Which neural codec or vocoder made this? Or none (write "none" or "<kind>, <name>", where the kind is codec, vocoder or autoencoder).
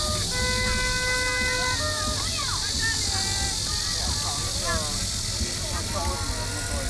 none